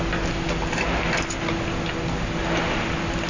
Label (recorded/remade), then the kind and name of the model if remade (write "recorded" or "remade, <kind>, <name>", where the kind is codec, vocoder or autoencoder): recorded